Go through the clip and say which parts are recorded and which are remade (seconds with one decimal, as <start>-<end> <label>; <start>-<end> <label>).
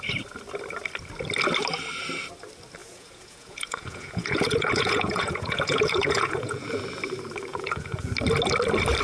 0.0-2.8 recorded; 2.8-6.8 remade; 6.8-7.5 recorded; 7.5-8.1 remade; 8.1-9.0 recorded